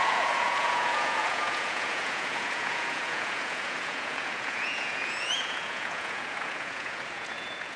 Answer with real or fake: fake